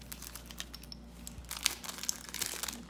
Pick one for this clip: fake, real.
real